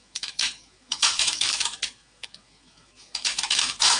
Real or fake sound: fake